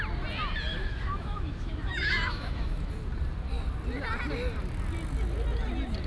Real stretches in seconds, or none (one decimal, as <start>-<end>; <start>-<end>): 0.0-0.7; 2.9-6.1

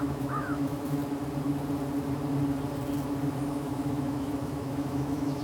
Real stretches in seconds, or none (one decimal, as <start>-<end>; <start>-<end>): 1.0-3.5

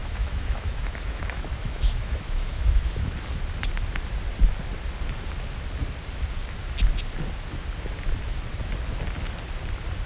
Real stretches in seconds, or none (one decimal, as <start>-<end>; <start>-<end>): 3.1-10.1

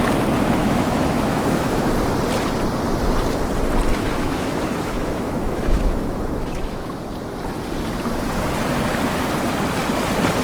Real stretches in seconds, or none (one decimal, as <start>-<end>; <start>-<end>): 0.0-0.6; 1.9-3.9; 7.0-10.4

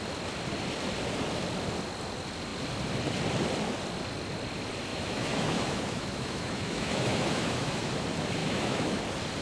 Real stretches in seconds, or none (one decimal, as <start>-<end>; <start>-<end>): 0.0-4.9; 7.9-8.4; 9.0-9.4